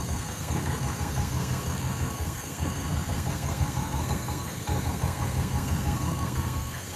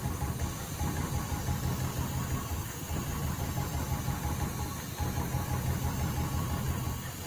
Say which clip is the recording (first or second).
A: second